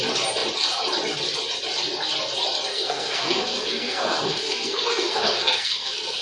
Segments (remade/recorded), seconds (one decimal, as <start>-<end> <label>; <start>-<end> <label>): 0.0-2.7 recorded; 2.7-6.2 remade